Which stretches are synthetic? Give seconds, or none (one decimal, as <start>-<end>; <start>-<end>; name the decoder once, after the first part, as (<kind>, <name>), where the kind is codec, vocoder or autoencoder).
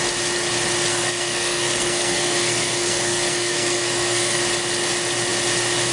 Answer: 0.9-4.4 (codec, SNAC)